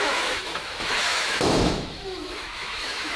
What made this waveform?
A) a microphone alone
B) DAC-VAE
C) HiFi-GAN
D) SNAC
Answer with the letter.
B